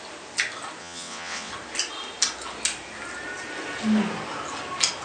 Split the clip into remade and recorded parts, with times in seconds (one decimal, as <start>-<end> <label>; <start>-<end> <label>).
0.0-0.8 recorded; 0.8-1.5 remade; 1.5-5.0 recorded